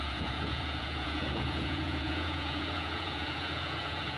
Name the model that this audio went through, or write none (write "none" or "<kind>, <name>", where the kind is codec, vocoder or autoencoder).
vocoder, Vocos